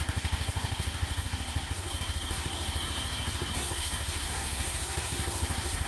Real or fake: fake